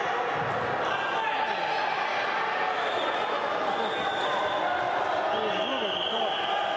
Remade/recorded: recorded